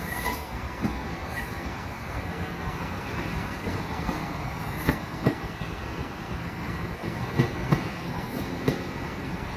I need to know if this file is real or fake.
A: fake